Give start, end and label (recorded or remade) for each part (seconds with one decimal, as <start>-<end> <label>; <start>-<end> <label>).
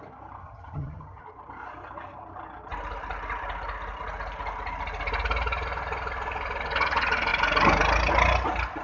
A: 0.0-0.4 recorded; 0.4-1.2 remade; 1.2-8.8 recorded